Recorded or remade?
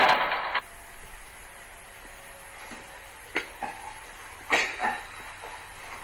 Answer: recorded